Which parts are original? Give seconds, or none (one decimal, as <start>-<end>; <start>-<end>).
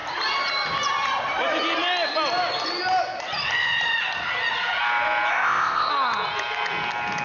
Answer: 0.0-5.3; 5.9-7.2